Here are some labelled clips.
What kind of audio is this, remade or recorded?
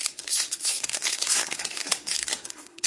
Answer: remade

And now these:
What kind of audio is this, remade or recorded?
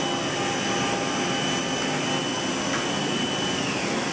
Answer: recorded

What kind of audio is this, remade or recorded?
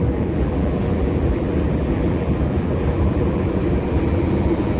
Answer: remade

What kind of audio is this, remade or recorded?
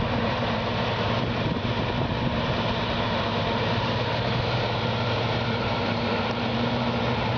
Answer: remade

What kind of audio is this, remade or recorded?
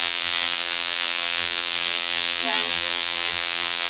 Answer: remade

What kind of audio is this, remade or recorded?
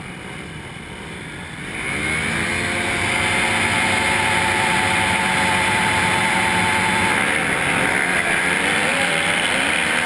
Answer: recorded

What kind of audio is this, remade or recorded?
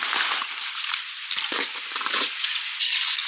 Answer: remade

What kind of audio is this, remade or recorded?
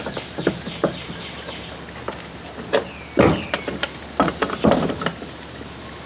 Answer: recorded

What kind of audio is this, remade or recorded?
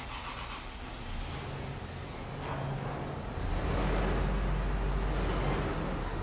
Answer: recorded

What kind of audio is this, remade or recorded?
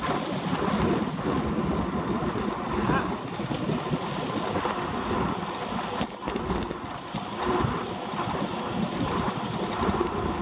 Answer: recorded